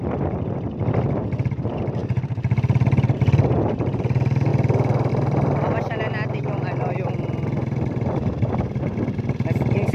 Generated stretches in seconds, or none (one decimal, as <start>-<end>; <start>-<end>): none